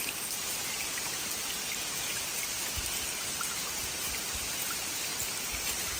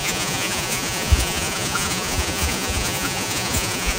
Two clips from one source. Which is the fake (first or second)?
second